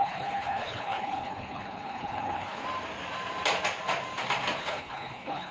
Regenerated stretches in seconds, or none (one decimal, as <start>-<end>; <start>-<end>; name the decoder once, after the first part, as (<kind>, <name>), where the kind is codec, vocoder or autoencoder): 0.0-2.6 (codec, HILCodec); 4.6-5.5